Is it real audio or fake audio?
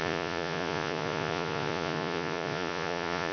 fake